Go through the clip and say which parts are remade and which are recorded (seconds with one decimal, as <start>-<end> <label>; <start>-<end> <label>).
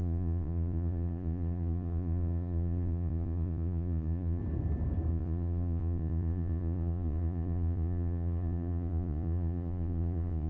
0.0-4.4 remade; 4.4-5.1 recorded; 5.1-10.5 remade